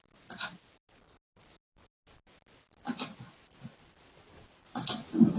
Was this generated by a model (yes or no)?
no